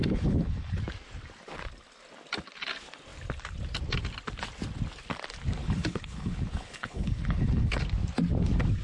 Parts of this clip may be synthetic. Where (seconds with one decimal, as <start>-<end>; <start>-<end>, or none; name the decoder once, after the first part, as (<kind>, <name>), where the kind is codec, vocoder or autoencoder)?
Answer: 0.0-0.8 (codec, HILCodec); 5.6-7.8